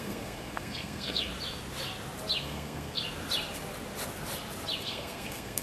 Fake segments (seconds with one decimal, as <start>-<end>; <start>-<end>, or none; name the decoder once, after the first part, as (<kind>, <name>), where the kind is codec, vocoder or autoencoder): 0.0-1.3 (codec, SNAC); 2.4-3.0; 4.8-5.6